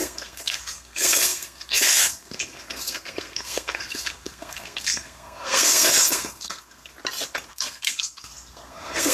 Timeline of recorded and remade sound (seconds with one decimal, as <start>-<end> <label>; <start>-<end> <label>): 0.0-6.9 remade; 6.9-7.5 recorded; 7.5-9.1 remade